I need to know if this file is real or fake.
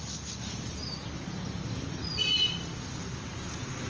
real